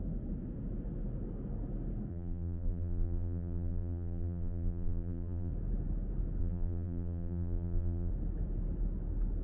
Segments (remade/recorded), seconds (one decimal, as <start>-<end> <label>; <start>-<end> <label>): 0.0-2.1 recorded; 2.1-5.5 remade; 5.5-6.4 recorded; 6.4-8.1 remade; 8.1-9.4 recorded